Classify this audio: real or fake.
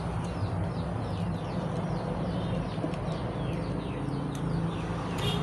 real